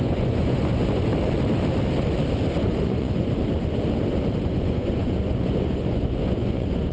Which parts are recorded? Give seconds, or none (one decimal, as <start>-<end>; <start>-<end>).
1.1-2.5; 3.4-4.4